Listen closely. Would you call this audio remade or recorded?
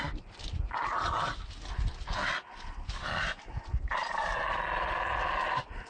recorded